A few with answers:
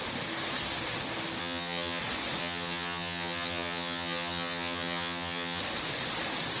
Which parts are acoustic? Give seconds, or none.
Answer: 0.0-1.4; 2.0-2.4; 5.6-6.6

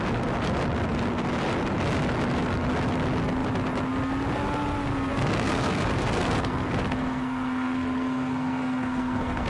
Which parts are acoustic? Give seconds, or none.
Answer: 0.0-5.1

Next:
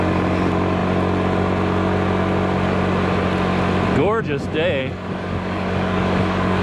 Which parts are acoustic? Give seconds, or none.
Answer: 0.0-4.8